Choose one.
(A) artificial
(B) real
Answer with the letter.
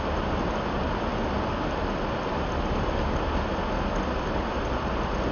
B